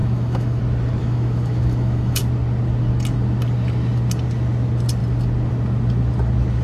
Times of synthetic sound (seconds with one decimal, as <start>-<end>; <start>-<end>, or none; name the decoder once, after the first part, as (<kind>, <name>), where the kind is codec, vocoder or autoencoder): 0.0-0.6 (autoencoder, DAC-VAE); 1.0-2.2